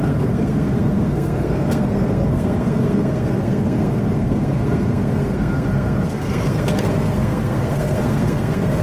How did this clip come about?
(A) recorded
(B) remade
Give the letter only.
B